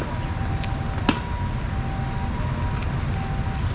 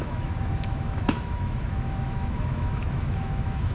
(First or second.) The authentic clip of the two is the first